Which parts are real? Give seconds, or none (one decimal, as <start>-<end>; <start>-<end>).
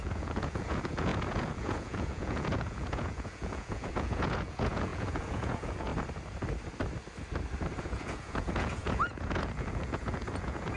5.9-7.8